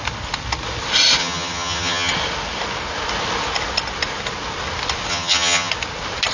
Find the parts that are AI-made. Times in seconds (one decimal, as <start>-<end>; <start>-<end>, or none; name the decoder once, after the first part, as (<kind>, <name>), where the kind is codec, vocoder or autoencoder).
1.2-2.1 (vocoder, HiFi-GAN); 5.1-5.7